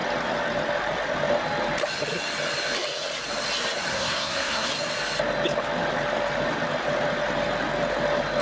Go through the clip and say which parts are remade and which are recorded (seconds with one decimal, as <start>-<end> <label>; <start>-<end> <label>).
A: 0.0-3.9 recorded; 3.9-4.7 remade; 4.7-8.4 recorded